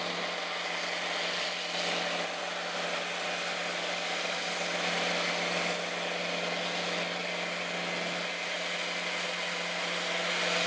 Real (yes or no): yes